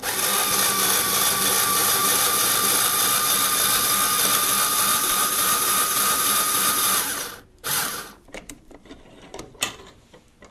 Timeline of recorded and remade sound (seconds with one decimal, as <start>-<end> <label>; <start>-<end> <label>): 0.0-1.8 recorded; 1.8-2.5 remade; 2.5-4.9 recorded; 4.9-9.6 remade; 9.6-10.5 recorded